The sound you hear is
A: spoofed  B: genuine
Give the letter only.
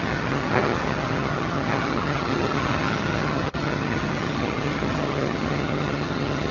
A